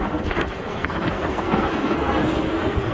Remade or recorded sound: remade